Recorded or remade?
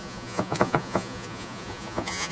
remade